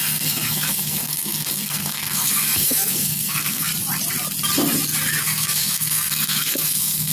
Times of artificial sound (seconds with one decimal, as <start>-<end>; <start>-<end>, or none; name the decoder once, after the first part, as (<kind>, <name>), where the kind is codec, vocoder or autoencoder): 0.0-3.7 (codec, SNAC); 5.2-7.1

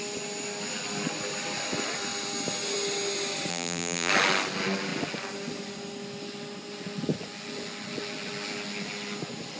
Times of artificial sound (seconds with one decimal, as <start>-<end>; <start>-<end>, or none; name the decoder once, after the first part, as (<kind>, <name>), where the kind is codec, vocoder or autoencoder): 3.5-4.1 (vocoder, BigVGAN v2)

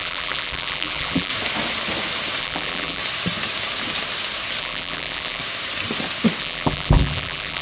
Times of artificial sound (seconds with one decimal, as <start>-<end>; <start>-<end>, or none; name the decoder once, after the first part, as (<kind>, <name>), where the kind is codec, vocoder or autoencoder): 0.0-1.3 (vocoder, BigVGAN v2); 2.4-3.0; 4.6-5.4; 6.4-7.6

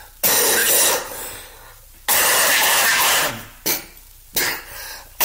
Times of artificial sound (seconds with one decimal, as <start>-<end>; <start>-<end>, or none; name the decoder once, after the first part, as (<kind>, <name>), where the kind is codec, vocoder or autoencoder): none